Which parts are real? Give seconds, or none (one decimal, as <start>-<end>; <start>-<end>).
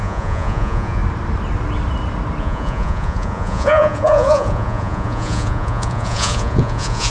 1.0-2.4